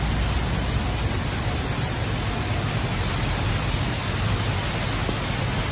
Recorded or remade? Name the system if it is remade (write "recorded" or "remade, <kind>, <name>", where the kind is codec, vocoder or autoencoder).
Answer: recorded